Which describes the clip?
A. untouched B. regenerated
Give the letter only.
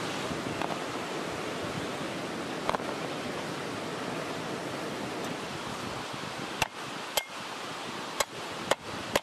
A